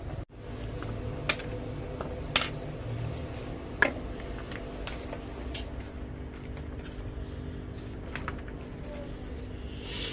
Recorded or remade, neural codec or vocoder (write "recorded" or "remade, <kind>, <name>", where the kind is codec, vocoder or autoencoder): recorded